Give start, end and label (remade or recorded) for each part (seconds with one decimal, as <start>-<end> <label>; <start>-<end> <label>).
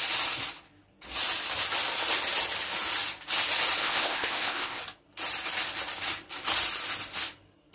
0.0-3.8 recorded; 3.8-4.8 remade; 4.8-7.7 recorded